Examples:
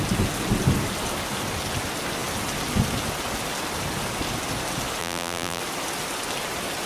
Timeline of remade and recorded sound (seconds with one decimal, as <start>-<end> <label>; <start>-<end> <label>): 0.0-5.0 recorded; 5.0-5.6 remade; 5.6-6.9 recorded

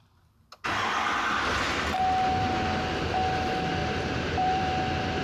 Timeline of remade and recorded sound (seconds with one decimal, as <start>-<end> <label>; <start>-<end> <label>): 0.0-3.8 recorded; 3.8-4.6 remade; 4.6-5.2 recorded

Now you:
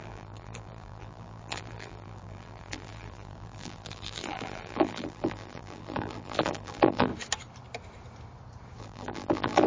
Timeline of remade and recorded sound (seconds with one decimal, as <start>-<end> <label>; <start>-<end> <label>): 0.0-7.1 remade; 7.1-8.8 recorded; 8.8-9.7 remade

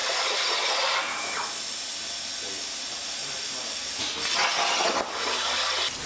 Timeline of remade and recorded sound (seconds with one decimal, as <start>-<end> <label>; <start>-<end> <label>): 0.0-3.2 recorded; 3.2-4.0 remade; 4.0-6.1 recorded

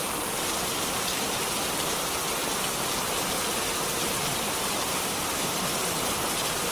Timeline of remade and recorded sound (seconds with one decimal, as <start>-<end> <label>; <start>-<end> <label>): 0.0-1.1 remade; 1.1-2.6 recorded; 2.6-6.7 remade

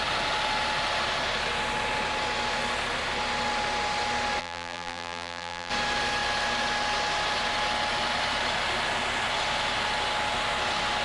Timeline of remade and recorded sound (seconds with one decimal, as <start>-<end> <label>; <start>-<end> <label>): 0.0-4.4 recorded; 4.4-5.7 remade; 5.7-11.0 recorded

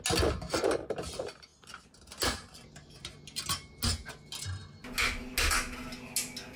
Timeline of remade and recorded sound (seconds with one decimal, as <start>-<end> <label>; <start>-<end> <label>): 0.0-6.6 recorded